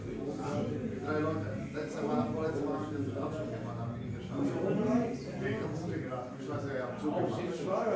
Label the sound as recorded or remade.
recorded